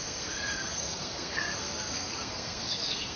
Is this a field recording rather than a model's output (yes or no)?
no